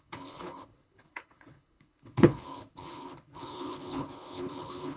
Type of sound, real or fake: fake